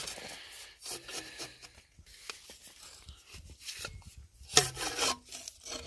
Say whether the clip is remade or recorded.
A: recorded